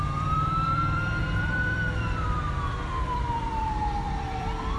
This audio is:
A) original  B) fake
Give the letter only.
B